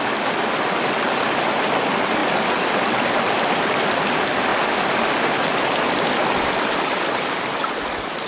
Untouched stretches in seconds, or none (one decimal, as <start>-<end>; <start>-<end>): 0.0-8.3